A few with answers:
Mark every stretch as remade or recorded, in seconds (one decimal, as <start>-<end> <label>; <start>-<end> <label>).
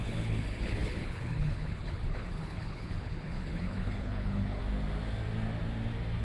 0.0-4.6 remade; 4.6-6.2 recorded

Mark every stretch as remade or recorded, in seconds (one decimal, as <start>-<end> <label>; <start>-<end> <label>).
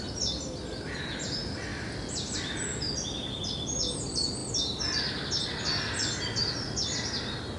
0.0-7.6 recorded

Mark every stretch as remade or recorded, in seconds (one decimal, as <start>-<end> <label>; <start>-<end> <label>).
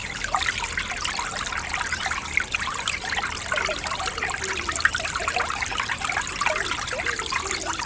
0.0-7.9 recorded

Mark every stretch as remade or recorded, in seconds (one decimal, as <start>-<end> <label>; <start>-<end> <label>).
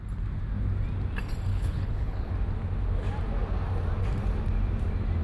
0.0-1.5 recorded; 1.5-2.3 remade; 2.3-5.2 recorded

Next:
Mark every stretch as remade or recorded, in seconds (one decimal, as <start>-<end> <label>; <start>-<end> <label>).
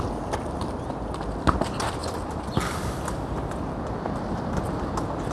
0.0-5.3 recorded